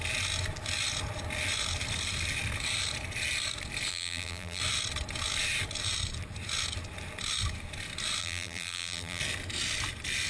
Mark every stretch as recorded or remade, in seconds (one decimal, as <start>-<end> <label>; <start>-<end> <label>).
0.0-3.9 recorded; 3.9-4.6 remade; 4.6-8.2 recorded; 8.2-9.2 remade; 9.2-10.3 recorded